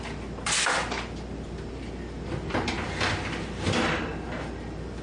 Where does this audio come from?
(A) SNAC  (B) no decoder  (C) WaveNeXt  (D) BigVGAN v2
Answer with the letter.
D